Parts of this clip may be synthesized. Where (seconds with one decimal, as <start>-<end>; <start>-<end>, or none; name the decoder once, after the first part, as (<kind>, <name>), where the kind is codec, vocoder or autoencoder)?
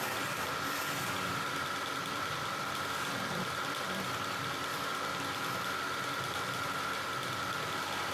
0.0-4.9 (vocoder, BigVGAN v2)